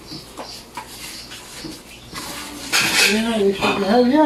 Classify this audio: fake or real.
real